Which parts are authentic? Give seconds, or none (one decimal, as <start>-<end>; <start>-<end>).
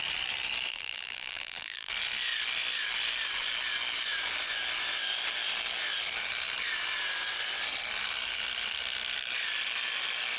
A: 0.0-0.7; 1.9-10.4